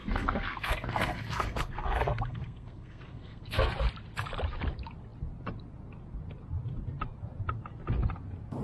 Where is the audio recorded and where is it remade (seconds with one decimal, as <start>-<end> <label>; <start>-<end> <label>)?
0.0-3.7 remade; 3.7-8.6 recorded